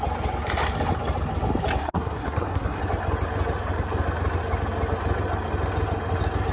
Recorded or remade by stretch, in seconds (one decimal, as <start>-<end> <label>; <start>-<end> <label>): 0.0-1.8 recorded; 1.8-2.8 remade; 2.8-6.5 recorded